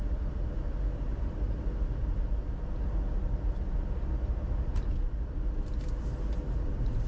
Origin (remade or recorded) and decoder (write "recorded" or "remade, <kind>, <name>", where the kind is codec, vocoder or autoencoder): recorded